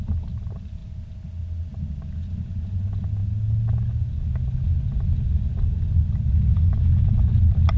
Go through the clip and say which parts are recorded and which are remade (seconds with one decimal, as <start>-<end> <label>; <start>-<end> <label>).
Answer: 0.0-6.5 recorded; 6.5-7.2 remade; 7.2-7.8 recorded